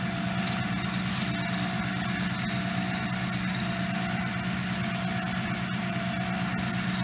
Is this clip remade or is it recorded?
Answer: recorded